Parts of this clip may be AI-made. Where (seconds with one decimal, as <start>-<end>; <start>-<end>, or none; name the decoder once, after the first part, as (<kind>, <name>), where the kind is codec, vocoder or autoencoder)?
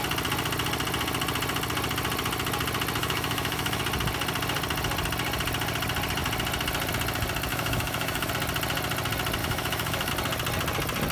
3.0-3.8 (autoencoder, DAC-VAE); 7.5-8.3; 9.4-10.1